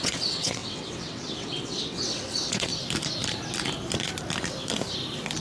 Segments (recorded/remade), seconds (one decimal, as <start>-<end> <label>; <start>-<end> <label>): 0.0-2.7 remade; 2.7-5.4 recorded